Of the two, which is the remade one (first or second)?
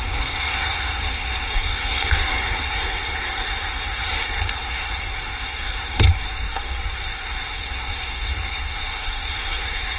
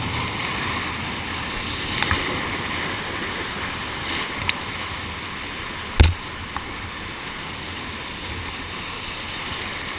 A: first